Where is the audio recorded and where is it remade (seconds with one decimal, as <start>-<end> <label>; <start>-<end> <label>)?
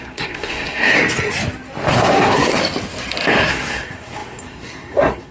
0.0-1.0 remade; 1.0-1.9 recorded; 1.9-2.6 remade; 2.6-3.5 recorded; 3.5-5.3 remade